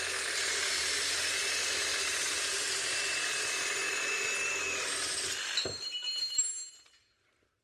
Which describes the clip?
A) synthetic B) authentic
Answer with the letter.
B